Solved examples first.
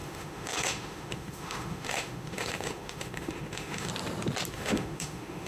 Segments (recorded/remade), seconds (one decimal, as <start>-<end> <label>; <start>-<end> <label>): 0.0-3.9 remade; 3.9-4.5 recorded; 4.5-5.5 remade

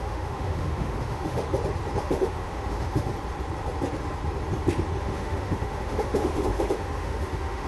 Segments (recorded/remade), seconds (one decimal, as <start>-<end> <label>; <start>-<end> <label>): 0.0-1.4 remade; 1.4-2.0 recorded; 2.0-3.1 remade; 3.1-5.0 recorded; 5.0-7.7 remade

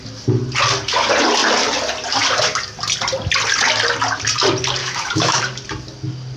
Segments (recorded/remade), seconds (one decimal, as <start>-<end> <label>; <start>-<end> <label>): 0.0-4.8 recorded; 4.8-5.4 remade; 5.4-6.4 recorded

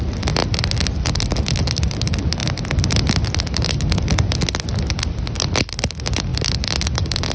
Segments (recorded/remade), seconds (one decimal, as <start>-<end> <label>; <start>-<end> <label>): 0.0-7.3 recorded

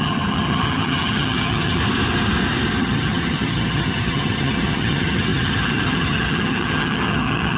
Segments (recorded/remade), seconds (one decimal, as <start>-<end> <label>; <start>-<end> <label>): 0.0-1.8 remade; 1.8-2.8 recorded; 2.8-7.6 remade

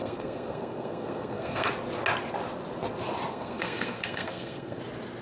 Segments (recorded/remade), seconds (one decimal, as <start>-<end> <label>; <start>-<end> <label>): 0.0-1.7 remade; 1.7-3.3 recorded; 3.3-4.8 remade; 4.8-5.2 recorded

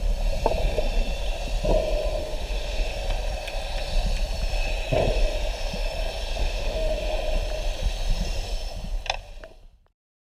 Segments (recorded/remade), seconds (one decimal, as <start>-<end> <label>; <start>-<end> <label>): 0.0-2.2 recorded; 2.2-2.9 remade; 2.9-6.4 recorded; 6.4-7.0 remade; 7.0-10.3 recorded

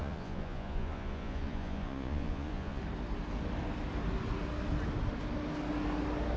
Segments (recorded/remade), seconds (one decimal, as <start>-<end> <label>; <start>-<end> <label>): 0.0-2.8 remade; 2.8-6.4 recorded